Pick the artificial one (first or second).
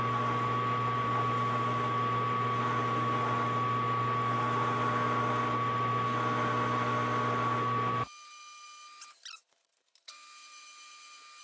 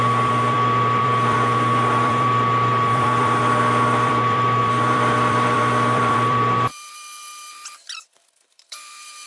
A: second